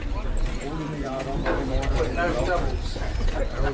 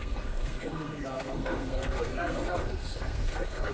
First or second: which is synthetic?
second